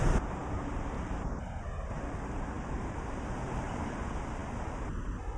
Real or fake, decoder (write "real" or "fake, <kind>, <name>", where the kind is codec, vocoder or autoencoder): real